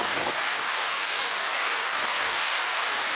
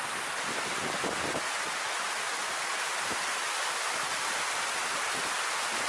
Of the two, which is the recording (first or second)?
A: second